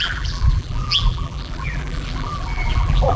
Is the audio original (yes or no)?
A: no